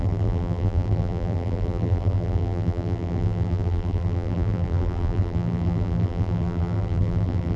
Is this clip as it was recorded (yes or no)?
no